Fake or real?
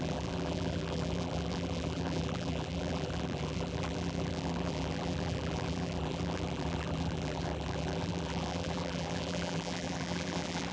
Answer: fake